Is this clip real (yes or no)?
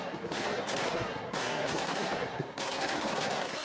no